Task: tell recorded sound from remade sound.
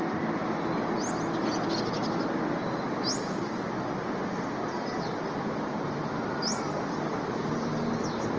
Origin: recorded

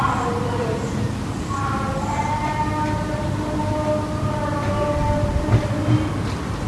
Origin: recorded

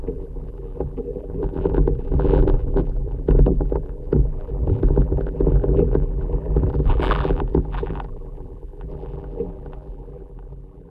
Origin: remade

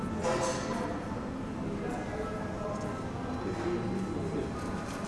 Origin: recorded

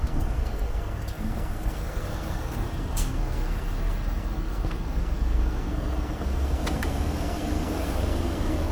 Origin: remade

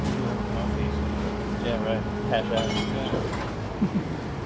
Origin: recorded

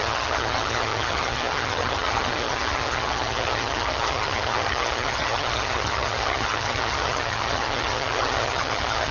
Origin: remade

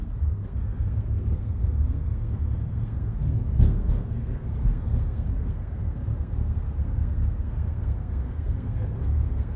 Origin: remade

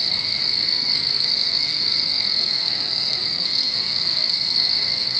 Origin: remade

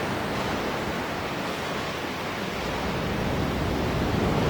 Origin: recorded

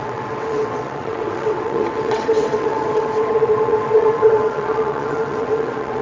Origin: remade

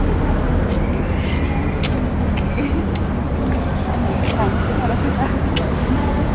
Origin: recorded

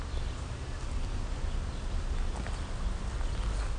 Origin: recorded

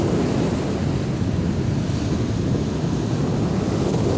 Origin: recorded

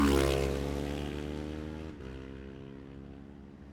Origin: recorded